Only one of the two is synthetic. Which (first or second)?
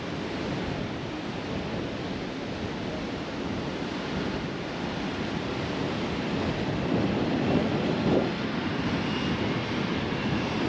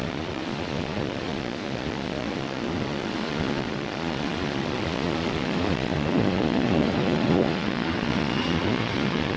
second